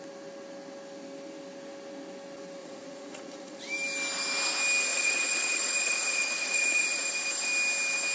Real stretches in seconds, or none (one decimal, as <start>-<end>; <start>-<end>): 0.0-2.6; 3.6-4.9; 7.1-8.1